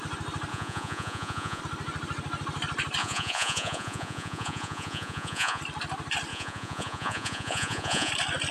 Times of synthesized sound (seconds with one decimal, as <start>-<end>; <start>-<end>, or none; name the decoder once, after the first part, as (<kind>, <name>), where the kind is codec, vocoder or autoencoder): 0.5-1.6 (vocoder, Vocos); 3.0-5.6; 6.3-8.1